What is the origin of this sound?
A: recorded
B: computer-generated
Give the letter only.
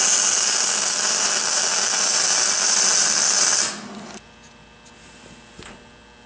A